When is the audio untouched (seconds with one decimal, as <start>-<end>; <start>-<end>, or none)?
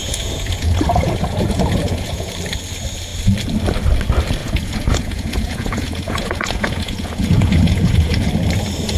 2.3-4.4; 8.3-9.0